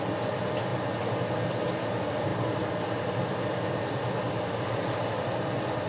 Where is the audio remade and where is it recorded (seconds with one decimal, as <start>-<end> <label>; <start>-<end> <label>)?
0.0-5.9 recorded